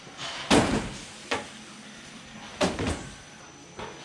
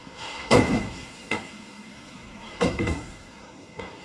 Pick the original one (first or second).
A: first